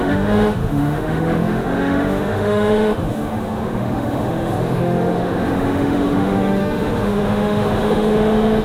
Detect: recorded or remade remade